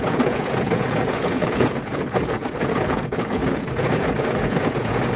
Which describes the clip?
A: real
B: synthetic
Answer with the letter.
B